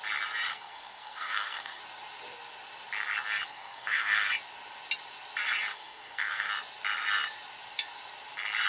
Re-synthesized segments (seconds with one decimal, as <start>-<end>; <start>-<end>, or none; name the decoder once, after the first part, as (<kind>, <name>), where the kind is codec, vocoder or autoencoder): 0.5-1.8 (codec, SNAC); 3.5-4.3; 5.7-6.5